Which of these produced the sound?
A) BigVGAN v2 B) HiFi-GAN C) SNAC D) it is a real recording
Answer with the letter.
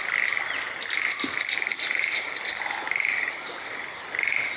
D